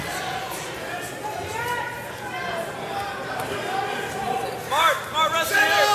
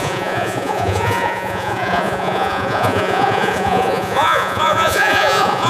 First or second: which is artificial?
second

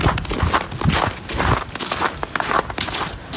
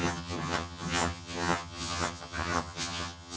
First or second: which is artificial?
second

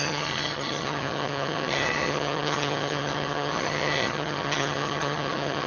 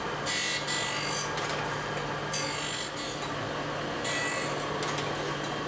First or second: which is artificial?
first